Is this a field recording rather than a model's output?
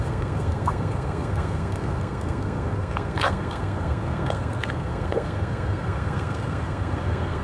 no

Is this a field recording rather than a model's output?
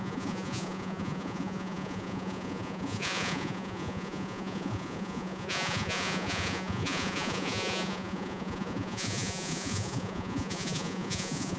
no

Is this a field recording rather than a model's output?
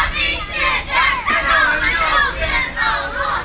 yes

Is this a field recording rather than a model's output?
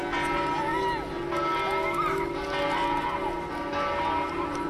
yes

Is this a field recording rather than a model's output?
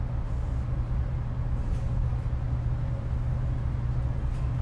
yes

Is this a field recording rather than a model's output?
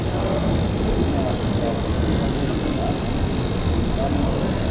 yes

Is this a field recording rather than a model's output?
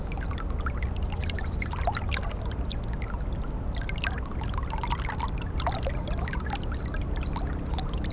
yes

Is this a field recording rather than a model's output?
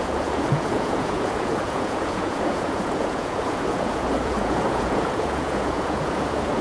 no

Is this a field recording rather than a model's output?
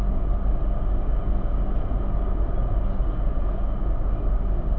yes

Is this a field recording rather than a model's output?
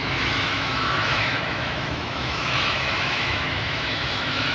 no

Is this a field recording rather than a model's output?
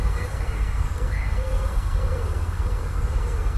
no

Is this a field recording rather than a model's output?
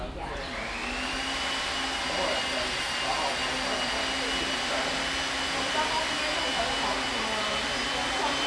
yes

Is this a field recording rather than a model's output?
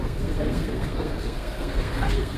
no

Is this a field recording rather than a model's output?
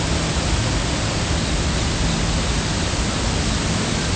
yes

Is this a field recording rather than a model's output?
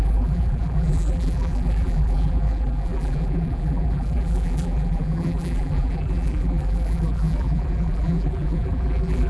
no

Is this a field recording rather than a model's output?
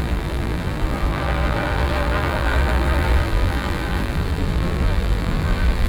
no